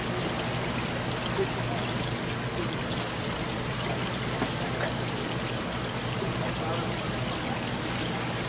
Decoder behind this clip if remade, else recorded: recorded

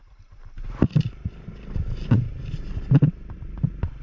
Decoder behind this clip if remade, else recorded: recorded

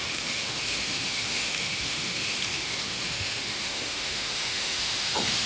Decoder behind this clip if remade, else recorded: remade, autoencoder, DAC-VAE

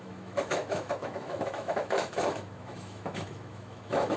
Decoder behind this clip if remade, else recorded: remade, autoencoder, DAC-VAE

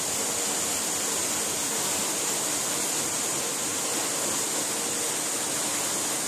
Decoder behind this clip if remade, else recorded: recorded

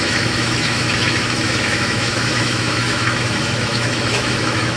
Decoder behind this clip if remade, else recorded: remade, autoencoder, DAC-VAE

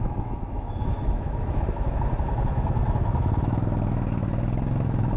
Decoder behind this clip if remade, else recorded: remade, autoencoder, DAC-VAE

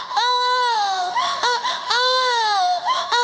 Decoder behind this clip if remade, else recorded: remade, autoencoder, DAC-VAE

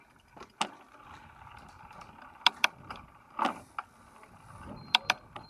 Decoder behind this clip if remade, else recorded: recorded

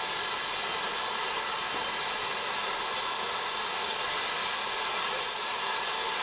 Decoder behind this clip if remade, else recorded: recorded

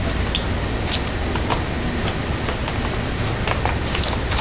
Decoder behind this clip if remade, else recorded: recorded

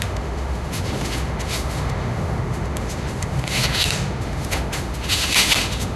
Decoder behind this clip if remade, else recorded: remade, autoencoder, DAC-VAE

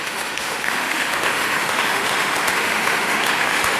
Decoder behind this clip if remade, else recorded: remade, autoencoder, DAC-VAE